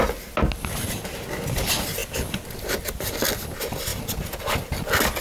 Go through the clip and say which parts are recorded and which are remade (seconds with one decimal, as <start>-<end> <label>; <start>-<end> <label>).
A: 0.0-5.2 recorded